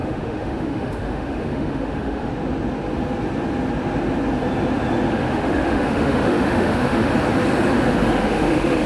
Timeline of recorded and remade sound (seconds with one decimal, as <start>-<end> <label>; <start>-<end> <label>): 0.0-2.3 remade; 2.3-5.1 recorded; 5.1-7.1 remade; 7.1-8.2 recorded; 8.2-8.9 remade